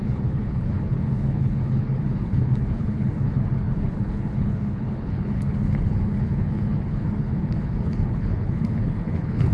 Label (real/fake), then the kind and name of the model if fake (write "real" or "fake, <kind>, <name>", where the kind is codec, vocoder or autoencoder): fake, codec, HILCodec